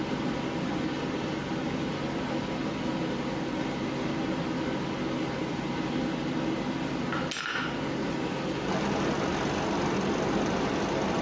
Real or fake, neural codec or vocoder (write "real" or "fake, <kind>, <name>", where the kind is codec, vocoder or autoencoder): real